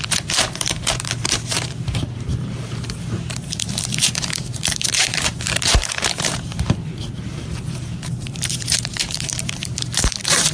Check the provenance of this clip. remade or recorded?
remade